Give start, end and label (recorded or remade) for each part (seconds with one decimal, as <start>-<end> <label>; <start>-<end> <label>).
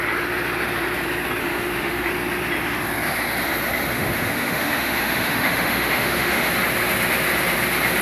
0.0-1.4 recorded; 1.4-2.1 remade; 2.1-3.9 recorded; 3.9-6.5 remade; 6.5-8.0 recorded